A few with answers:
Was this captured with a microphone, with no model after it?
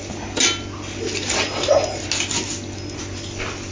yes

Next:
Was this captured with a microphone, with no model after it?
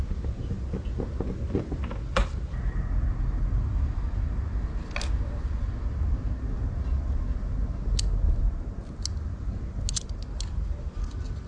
yes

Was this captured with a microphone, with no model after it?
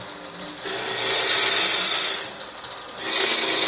yes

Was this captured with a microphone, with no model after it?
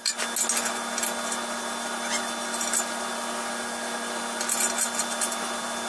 yes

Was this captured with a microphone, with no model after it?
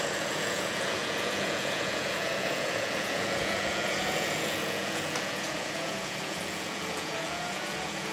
no